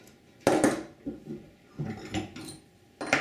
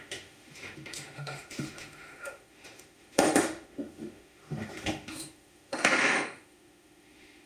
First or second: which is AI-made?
second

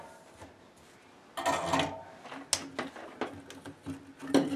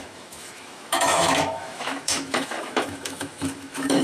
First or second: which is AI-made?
second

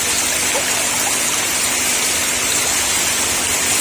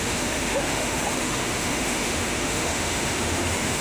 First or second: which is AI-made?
second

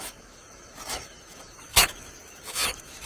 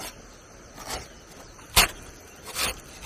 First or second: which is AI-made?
first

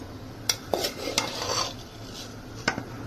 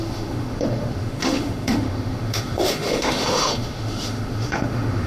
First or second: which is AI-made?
second